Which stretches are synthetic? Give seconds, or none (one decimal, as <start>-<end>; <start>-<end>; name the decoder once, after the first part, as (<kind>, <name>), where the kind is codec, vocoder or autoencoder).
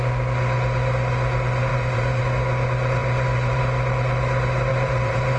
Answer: 1.7-2.2 (vocoder, BigVGAN v2); 3.0-3.6; 4.7-5.4